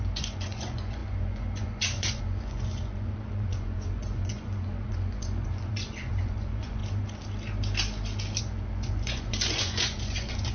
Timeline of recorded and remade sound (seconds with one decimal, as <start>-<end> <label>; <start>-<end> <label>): 0.0-6.8 remade; 6.8-8.4 recorded; 8.4-10.5 remade